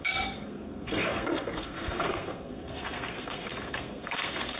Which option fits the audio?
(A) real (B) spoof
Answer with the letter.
B